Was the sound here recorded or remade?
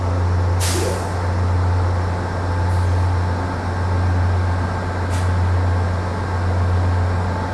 recorded